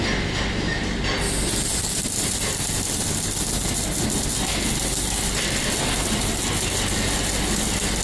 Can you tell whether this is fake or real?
real